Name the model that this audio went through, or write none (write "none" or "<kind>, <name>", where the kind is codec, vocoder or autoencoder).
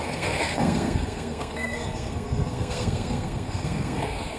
codec, SNAC